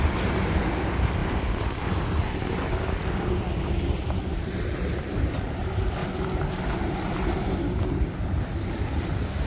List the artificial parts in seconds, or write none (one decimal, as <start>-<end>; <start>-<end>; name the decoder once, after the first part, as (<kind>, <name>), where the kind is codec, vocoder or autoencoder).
4.3-5.4 (vocoder, BigVGAN v2); 6.0-7.6